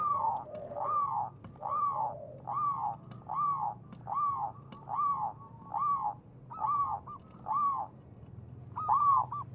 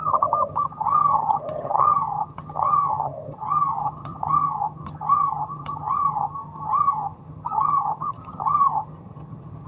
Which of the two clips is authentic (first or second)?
first